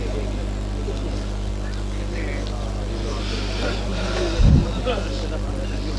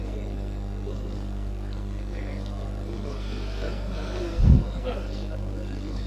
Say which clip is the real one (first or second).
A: first